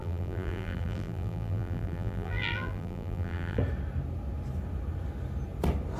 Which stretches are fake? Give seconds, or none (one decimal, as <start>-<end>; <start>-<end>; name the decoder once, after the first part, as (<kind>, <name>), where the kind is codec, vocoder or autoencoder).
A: 0.0-3.6 (vocoder, BigVGAN v2)